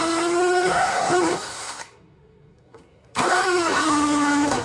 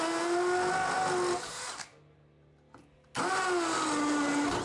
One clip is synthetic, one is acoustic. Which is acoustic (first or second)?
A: second